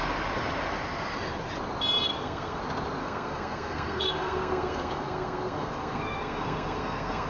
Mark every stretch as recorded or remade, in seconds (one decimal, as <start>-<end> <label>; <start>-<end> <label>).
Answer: 0.0-2.1 recorded; 2.1-2.6 remade; 2.6-3.0 recorded; 3.0-7.3 remade